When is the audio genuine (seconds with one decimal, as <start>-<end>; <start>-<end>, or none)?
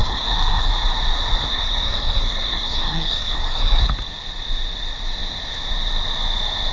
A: 0.7-1.5; 3.8-6.7